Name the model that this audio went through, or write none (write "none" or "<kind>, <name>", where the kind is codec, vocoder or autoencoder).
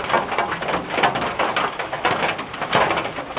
none